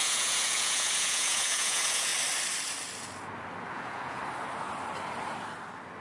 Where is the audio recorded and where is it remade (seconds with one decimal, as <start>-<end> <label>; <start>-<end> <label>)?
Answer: 0.0-2.1 remade; 2.1-3.7 recorded; 3.7-4.2 remade; 4.2-6.0 recorded